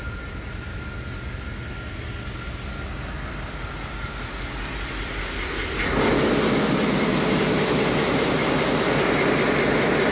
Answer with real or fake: real